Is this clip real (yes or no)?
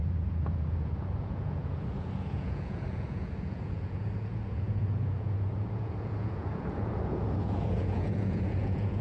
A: no